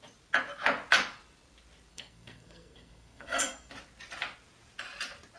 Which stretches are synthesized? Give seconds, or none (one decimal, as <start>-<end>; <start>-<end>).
1.9-3.7